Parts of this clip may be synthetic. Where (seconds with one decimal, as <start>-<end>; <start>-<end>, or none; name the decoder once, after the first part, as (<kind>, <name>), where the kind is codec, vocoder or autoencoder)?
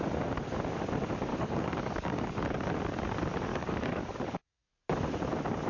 1.3-2.6 (codec, DAC); 3.5-4.7